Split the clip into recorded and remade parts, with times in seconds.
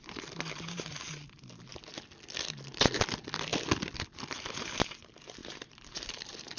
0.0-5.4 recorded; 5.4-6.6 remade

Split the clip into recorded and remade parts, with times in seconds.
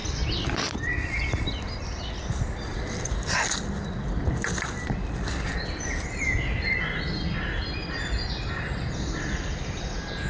0.0-2.1 remade; 2.1-2.7 recorded; 2.7-6.2 remade; 6.2-10.3 recorded